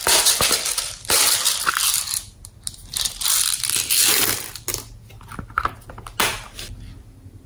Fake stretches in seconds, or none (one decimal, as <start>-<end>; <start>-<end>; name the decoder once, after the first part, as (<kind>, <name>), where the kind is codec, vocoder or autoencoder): 0.0-1.7 (vocoder, BigVGAN v2)